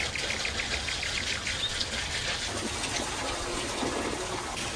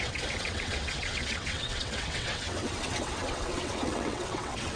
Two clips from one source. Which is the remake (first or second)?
second